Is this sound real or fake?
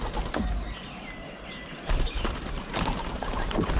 real